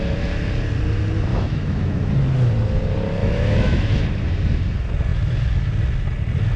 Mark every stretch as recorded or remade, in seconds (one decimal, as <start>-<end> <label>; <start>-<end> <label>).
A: 0.0-1.3 recorded; 1.3-2.1 remade; 2.1-3.2 recorded; 3.2-4.0 remade; 4.0-6.6 recorded